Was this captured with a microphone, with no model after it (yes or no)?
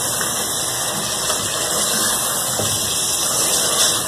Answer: yes